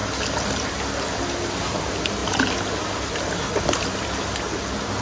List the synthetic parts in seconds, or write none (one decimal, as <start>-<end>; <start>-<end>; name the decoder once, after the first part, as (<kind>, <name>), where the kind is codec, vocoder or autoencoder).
none